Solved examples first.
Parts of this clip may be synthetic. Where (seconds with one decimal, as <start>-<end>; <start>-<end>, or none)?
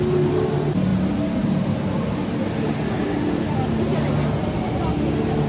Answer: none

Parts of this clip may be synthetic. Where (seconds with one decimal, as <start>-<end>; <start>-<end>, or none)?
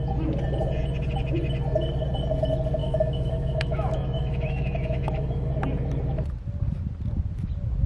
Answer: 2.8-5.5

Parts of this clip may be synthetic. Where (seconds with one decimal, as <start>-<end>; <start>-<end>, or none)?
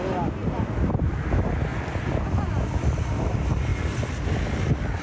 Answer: none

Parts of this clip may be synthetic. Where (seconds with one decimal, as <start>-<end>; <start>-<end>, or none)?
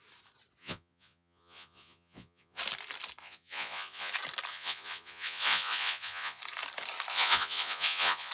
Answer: 0.6-2.6; 3.2-4.1; 4.5-6.4; 7.1-8.3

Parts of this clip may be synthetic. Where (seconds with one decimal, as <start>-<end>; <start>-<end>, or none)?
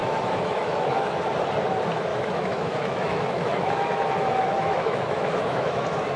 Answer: 0.0-1.2; 2.1-5.8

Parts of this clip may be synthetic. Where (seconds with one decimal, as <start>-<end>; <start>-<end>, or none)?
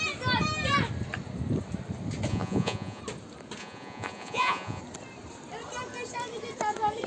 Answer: 2.3-3.0; 3.6-4.8